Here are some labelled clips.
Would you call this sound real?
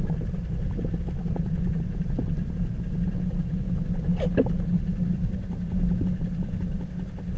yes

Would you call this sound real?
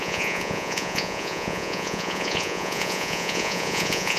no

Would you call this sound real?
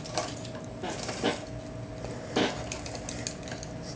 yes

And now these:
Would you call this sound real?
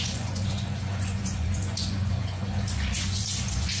no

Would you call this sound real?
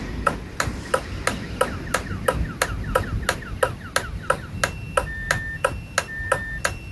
yes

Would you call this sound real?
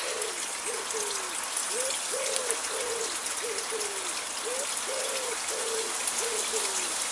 yes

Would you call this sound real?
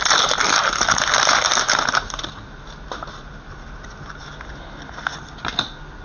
yes